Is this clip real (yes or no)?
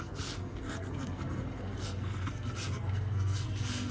no